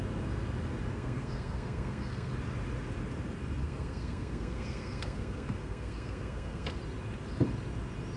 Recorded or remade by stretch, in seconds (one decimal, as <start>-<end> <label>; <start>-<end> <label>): 0.0-0.9 recorded; 0.9-2.3 remade; 2.3-3.6 recorded; 3.6-6.8 remade; 6.8-8.2 recorded